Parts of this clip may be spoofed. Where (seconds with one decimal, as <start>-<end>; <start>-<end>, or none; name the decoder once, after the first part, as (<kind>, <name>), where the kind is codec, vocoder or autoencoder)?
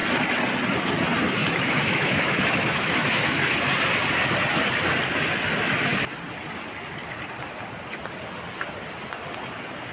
1.4-3.6 (autoencoder, DAC-VAE)